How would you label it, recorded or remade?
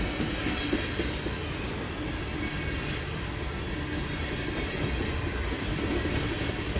recorded